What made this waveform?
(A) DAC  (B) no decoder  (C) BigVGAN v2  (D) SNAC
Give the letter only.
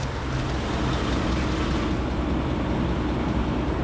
B